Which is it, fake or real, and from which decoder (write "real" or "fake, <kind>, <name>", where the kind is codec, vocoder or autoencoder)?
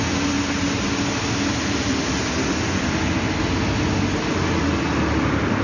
real